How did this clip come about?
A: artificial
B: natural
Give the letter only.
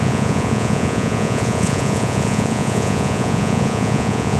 A